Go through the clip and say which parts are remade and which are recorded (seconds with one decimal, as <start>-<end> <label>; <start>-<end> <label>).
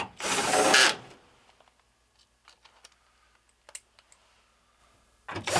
0.0-5.6 recorded